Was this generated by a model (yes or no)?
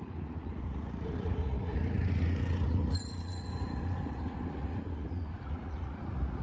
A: yes